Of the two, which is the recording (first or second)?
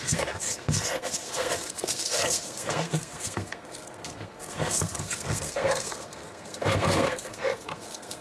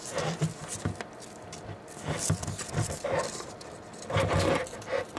second